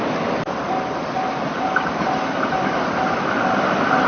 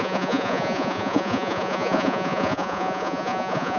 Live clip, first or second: first